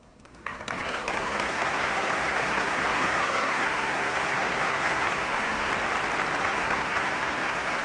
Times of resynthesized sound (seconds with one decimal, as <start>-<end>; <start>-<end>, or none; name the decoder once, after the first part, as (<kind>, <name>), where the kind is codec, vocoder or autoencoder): 0.0-5.7 (codec, SNAC); 6.4-7.8